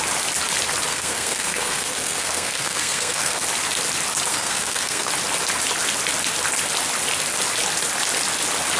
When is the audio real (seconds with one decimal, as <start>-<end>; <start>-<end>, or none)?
0.0-0.9; 3.4-4.3; 5.1-8.8